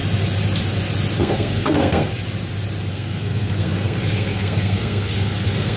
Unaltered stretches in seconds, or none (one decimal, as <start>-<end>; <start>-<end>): 0.0-1.2; 2.1-2.9